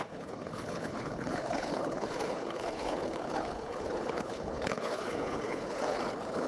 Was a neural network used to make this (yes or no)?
yes